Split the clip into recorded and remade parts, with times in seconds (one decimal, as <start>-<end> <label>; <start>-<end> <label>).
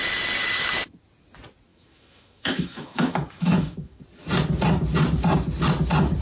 0.0-1.7 recorded; 1.7-4.0 remade; 4.0-6.2 recorded